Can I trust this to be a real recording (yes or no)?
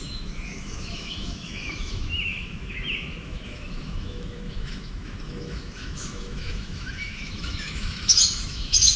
no